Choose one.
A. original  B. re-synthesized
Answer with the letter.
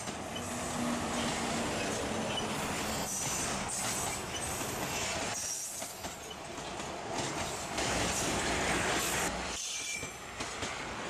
A